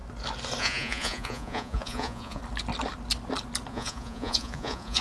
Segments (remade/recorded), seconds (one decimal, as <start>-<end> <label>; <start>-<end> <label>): 0.0-0.6 recorded; 0.6-2.4 remade; 2.4-3.7 recorded; 3.7-5.0 remade